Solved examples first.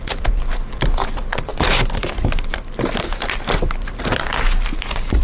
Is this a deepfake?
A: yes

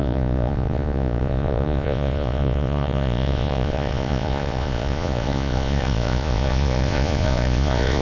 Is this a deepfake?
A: yes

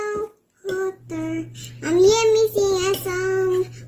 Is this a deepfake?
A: no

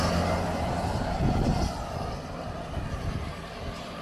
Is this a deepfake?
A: no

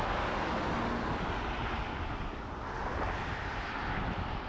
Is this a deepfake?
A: no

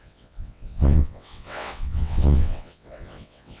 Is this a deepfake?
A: yes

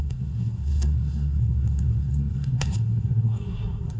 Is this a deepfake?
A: yes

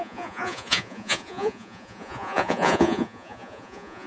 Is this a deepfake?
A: yes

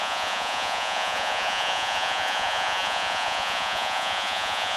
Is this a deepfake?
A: yes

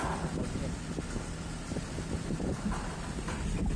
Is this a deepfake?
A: no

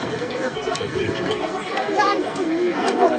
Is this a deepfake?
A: yes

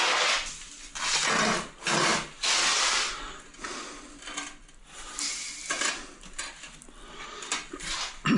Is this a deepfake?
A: no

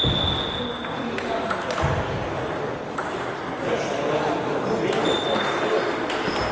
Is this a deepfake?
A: no